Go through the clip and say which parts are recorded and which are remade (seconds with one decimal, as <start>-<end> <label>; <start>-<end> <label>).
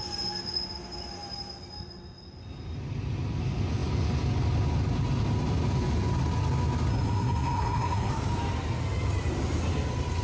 0.0-6.9 recorded; 6.9-8.1 remade; 8.1-10.2 recorded